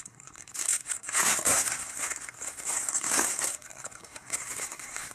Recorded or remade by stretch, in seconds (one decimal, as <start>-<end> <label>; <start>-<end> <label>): 0.0-5.1 remade